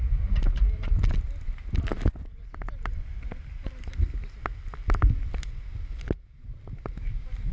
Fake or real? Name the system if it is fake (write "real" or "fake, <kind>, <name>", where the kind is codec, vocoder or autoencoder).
real